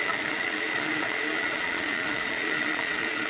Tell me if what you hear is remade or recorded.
remade